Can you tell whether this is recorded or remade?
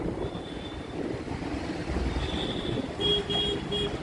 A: recorded